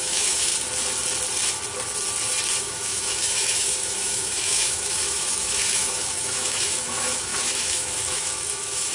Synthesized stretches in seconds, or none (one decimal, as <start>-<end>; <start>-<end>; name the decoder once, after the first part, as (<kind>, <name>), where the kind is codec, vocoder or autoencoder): 0.0-0.5 (autoencoder, DAC-VAE); 2.6-8.9